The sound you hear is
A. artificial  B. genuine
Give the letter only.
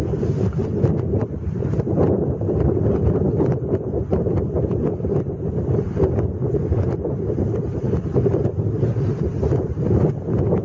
B